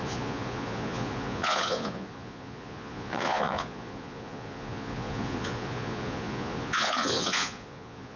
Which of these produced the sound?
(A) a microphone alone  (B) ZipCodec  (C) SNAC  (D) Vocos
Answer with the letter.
D